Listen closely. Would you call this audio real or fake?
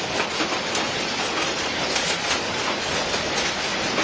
real